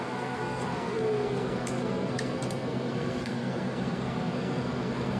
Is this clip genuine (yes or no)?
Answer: no